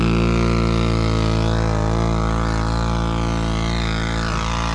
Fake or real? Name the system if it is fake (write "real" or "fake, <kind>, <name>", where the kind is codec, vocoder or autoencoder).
real